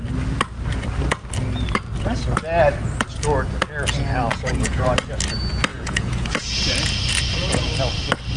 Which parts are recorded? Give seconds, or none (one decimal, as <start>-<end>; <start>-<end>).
0.0-4.3; 4.9-5.7; 6.4-8.4